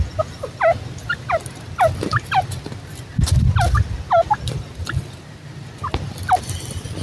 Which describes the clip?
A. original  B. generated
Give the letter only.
A